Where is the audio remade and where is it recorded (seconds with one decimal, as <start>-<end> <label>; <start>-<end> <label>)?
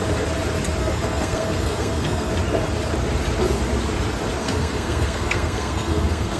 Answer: 0.0-0.8 recorded; 0.8-2.3 remade; 2.3-4.4 recorded; 4.4-6.4 remade